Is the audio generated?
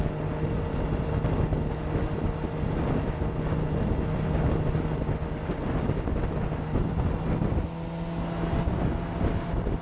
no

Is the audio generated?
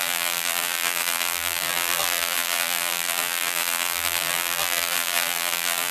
yes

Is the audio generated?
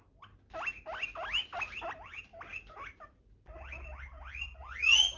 no